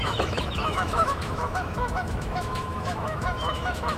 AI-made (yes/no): yes